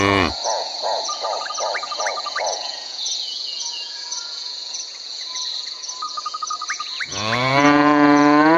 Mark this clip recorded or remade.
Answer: remade